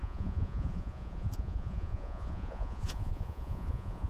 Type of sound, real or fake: fake